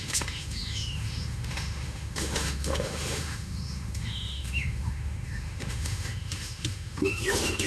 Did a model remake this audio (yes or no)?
yes